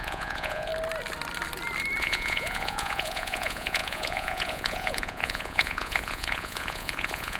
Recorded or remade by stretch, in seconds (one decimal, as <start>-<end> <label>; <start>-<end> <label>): 0.0-0.7 remade; 0.7-2.0 recorded; 2.0-7.4 remade